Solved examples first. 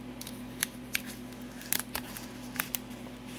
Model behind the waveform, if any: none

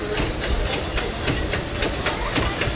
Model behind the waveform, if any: none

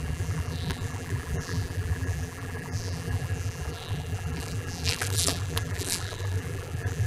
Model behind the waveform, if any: vocoder, BigVGAN v2